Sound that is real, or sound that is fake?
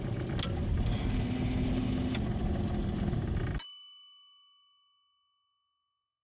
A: real